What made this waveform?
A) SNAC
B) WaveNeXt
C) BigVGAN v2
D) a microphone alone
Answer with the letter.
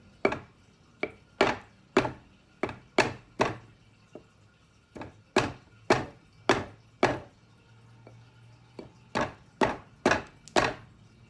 D